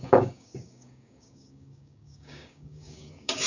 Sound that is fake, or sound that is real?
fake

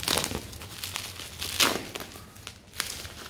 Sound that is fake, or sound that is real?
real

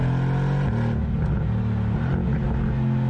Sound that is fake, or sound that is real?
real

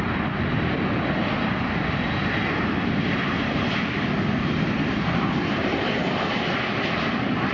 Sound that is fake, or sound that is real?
real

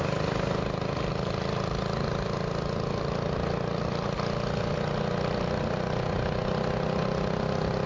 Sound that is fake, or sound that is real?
real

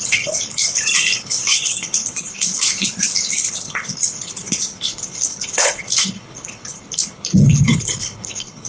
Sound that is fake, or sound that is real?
fake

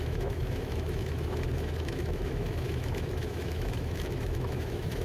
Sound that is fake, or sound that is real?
fake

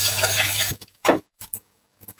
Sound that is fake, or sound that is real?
fake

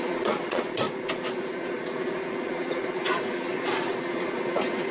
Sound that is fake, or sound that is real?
fake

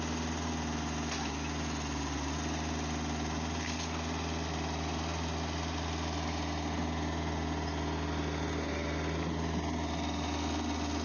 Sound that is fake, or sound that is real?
real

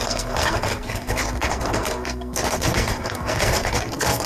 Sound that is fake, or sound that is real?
fake